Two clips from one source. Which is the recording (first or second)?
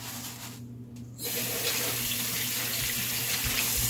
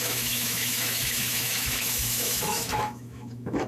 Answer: first